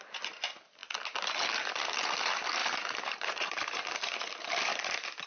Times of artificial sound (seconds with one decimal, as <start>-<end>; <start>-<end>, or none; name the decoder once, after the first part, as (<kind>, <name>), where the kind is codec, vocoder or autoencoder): 2.6-4.0 (vocoder, BigVGAN v2)